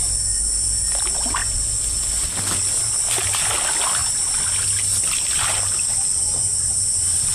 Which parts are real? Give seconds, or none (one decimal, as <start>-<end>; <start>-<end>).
0.0-6.5